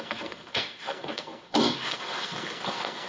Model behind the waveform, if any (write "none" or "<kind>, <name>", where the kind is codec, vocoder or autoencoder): codec, SNAC